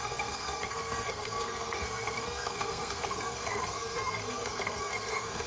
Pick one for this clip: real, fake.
fake